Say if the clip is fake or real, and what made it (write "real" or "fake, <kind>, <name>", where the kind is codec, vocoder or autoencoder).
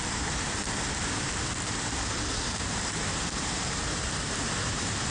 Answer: fake, vocoder, BigVGAN v2